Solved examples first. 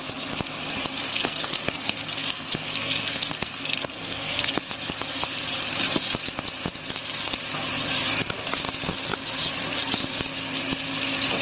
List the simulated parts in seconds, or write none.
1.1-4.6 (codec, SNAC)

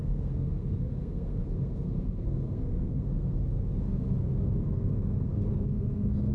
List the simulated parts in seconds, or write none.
0.0-6.3 (codec, SNAC)

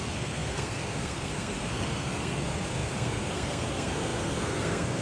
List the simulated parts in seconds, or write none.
0.0-5.0 (codec, SNAC)

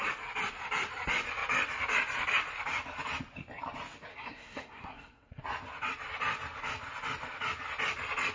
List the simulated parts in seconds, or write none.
4.1-5.4 (codec, SNAC)

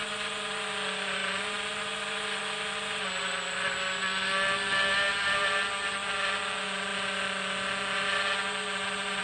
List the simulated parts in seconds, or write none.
none

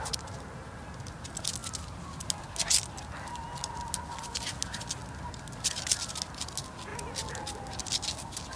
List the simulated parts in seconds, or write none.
none

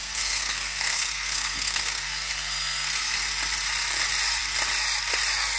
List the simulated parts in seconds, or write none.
0.0-3.2 (codec, SNAC)